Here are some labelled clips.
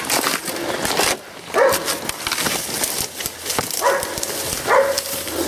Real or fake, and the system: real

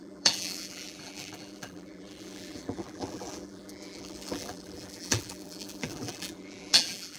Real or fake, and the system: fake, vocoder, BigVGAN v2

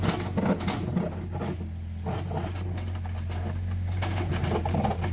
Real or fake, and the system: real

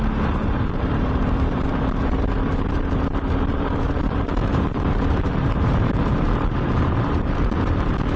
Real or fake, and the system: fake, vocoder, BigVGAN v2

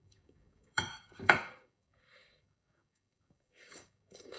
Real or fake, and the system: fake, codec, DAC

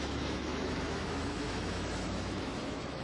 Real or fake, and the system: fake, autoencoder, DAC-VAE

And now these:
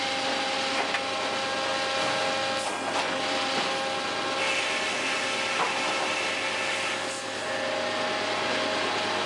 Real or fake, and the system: real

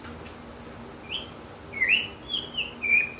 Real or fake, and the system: real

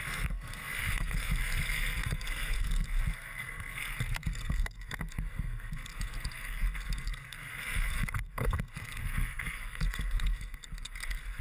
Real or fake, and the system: fake, codec, SNAC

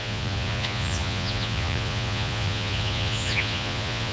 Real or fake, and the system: fake, vocoder, Vocos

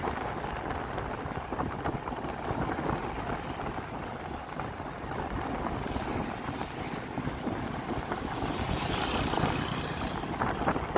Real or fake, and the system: real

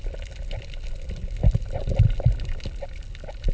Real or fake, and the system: real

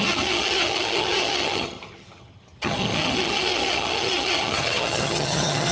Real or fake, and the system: fake, vocoder, HiFi-GAN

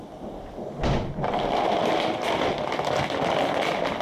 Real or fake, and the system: real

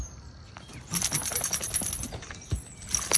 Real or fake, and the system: real